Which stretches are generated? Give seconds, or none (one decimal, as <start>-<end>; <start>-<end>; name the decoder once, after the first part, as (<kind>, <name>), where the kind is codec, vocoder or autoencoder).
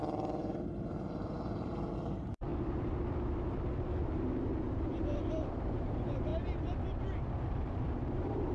0.0-2.5 (vocoder, BigVGAN v2); 3.5-6.3; 7.4-8.5